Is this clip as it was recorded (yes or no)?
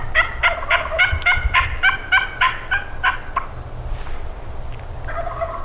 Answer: yes